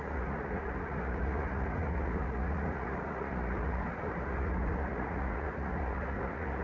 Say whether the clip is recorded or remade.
remade